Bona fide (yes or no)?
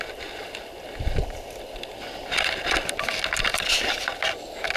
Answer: yes